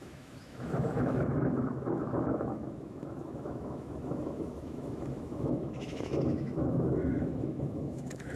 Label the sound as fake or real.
fake